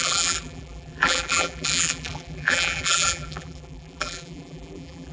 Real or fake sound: fake